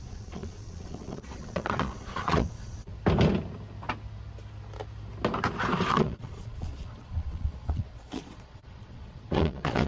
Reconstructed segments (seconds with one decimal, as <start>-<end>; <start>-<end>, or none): 0.0-2.9; 5.9-9.9